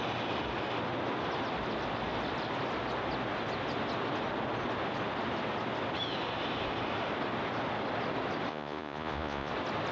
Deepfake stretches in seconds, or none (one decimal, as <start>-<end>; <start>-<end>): 8.5-9.5